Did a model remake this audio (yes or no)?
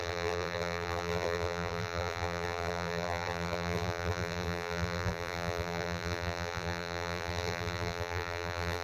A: yes